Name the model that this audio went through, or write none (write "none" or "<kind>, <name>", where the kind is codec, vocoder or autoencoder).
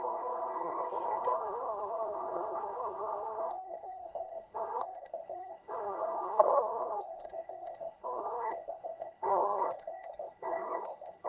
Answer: codec, SNAC